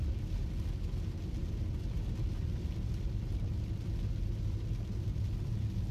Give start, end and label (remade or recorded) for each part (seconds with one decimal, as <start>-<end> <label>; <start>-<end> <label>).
0.0-5.9 recorded